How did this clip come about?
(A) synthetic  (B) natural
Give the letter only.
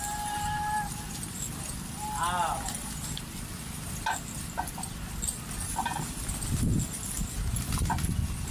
B